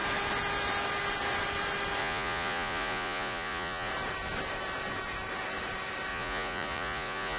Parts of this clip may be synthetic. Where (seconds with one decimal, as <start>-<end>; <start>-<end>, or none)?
2.0-3.9; 6.1-7.4